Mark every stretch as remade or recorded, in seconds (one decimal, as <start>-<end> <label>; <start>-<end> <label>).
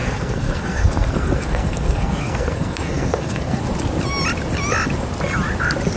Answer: 0.0-3.6 remade; 3.6-6.0 recorded